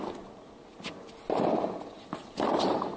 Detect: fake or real real